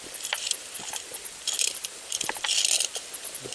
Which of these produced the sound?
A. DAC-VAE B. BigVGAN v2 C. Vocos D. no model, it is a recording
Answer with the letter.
B